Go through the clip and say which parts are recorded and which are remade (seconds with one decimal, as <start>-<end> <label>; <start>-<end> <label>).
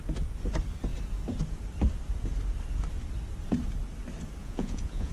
0.0-4.4 recorded; 4.4-5.1 remade